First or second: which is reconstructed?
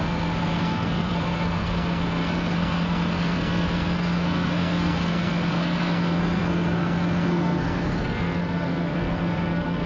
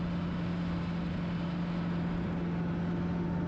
first